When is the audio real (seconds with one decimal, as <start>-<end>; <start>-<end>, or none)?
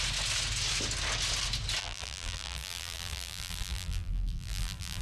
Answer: 0.0-1.8